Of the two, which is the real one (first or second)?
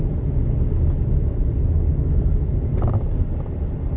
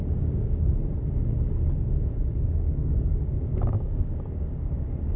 first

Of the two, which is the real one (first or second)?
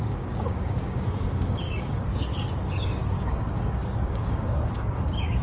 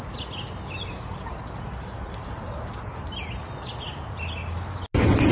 second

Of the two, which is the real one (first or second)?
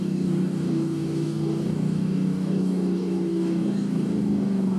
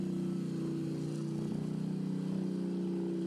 second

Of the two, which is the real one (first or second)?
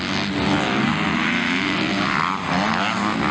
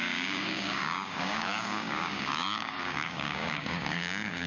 first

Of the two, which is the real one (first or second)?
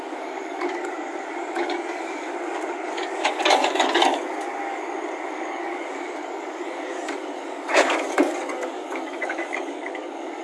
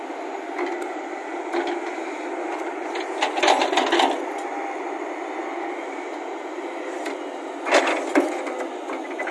second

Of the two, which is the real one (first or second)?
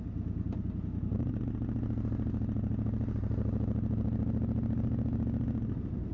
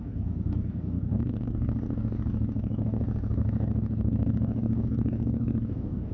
first